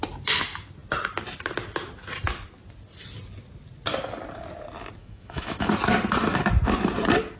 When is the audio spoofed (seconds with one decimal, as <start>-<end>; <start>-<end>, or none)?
5.0-5.7